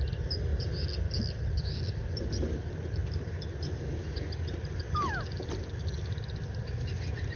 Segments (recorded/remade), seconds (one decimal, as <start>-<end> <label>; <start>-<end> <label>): 0.0-7.4 recorded